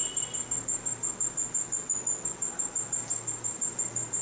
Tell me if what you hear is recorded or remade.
recorded